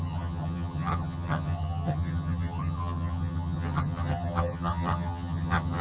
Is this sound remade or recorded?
remade